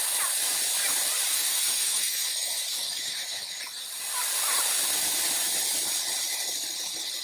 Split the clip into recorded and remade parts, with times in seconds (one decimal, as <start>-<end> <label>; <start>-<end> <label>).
0.0-1.3 recorded; 1.3-3.6 remade; 3.6-7.2 recorded